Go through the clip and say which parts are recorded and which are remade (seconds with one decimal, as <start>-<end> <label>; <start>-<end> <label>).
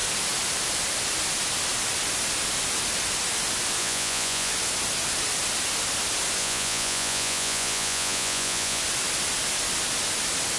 0.0-3.8 recorded; 3.8-4.5 remade; 4.5-6.4 recorded; 6.4-8.8 remade; 8.8-10.6 recorded